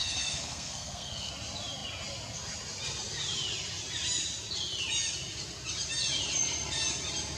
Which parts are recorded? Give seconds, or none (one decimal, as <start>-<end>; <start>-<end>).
1.3-7.4